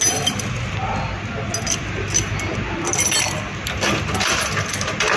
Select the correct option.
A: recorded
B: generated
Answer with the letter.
A